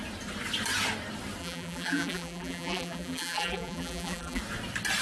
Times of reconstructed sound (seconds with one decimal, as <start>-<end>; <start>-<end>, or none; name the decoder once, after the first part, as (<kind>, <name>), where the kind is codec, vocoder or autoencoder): 1.4-4.4 (vocoder, BigVGAN v2)